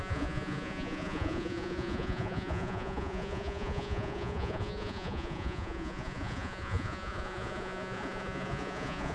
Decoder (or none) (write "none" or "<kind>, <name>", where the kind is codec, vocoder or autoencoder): vocoder, Vocos